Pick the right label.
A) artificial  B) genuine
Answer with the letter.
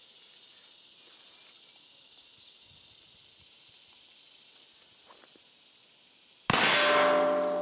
B